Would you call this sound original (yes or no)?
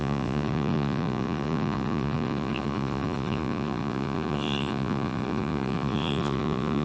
no